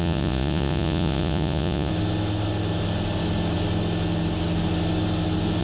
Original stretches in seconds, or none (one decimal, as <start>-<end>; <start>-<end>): 1.9-5.6